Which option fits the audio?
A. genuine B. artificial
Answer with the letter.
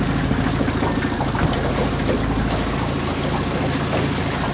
A